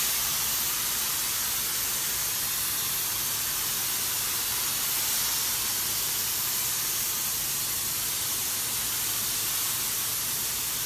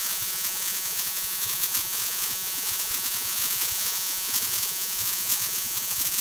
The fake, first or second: second